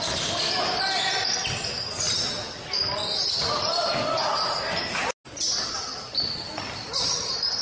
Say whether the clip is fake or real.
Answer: real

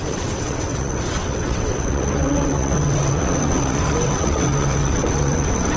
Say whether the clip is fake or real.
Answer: fake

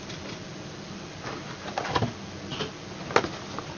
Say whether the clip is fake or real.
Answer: real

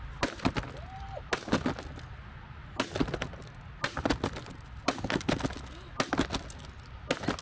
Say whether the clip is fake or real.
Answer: real